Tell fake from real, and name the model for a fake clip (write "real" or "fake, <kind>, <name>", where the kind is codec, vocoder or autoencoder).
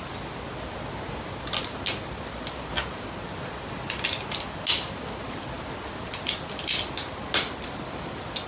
real